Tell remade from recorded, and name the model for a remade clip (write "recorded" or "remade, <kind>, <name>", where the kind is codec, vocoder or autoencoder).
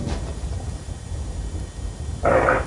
recorded